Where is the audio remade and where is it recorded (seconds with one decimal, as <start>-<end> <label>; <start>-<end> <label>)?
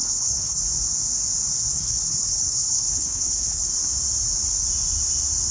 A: 0.0-0.6 remade; 0.6-1.7 recorded; 1.7-3.7 remade; 3.7-5.5 recorded